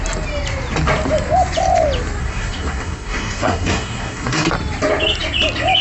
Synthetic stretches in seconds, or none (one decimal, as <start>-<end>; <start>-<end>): 2.2-4.5